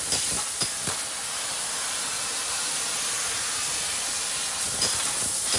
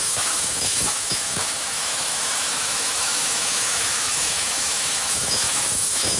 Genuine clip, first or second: first